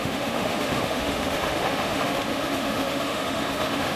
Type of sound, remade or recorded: remade